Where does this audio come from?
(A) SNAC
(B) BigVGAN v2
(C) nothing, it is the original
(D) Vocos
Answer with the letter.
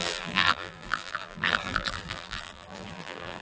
B